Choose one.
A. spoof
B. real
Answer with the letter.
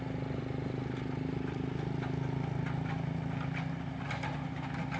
B